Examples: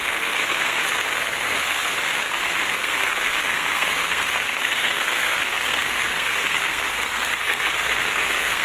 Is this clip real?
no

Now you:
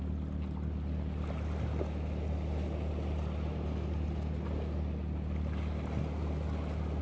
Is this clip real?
yes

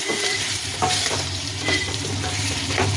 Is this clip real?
no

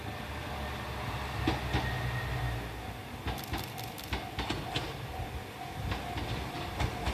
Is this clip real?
yes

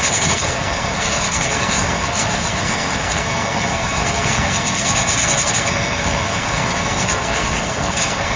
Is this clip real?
no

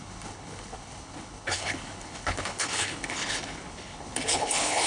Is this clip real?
no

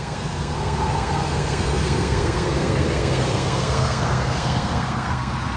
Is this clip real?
no